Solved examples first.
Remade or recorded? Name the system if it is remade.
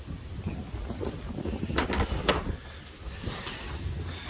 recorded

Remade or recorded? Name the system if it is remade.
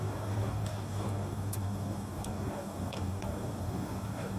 remade, codec, DAC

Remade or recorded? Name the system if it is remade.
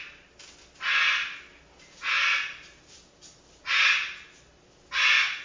recorded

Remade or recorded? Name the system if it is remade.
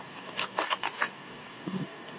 remade, codec, DAC